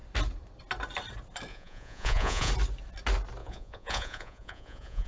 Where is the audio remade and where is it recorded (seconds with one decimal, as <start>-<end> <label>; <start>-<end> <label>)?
0.0-1.5 recorded; 1.5-2.5 remade; 2.5-3.4 recorded; 3.4-5.1 remade